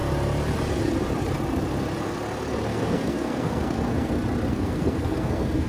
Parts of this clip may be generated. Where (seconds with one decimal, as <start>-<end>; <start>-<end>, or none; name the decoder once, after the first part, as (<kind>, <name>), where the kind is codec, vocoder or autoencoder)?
2.7-4.1 (codec, SNAC); 4.5-5.7